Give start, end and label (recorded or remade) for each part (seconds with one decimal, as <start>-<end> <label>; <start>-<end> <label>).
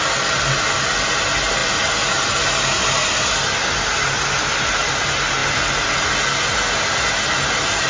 0.0-7.9 recorded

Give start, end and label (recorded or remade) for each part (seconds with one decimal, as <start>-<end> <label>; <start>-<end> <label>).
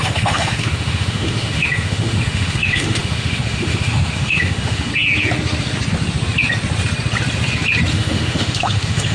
0.0-4.9 remade; 4.9-7.9 recorded; 7.9-9.1 remade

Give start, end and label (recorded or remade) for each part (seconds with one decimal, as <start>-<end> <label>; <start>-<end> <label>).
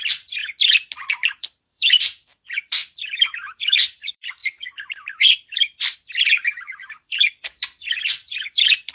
0.0-0.4 remade; 0.4-1.1 recorded; 1.1-2.8 remade; 2.8-3.6 recorded; 3.6-4.4 remade; 4.4-6.1 recorded; 6.1-8.9 remade